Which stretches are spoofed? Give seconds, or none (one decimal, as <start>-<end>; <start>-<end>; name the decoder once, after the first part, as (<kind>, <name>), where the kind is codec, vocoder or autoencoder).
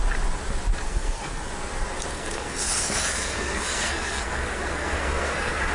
0.8-1.5 (codec, SNAC); 2.1-5.7